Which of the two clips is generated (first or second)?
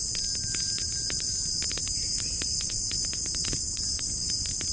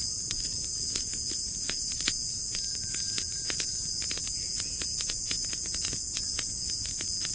second